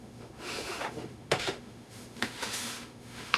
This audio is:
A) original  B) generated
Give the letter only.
B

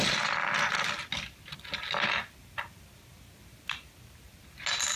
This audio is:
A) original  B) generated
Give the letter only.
A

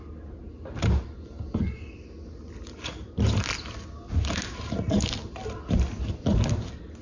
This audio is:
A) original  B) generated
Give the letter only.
A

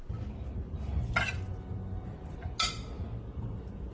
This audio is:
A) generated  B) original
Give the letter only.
B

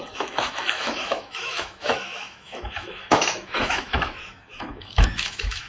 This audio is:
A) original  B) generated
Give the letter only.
B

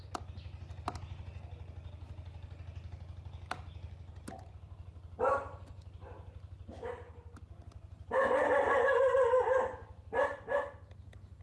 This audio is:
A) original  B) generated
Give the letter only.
A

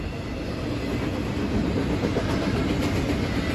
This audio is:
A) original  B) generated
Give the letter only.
A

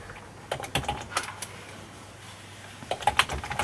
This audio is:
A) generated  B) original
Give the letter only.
B